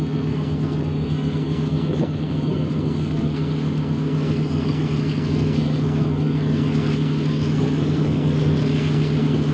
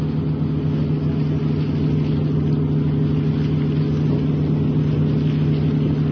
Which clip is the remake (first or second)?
first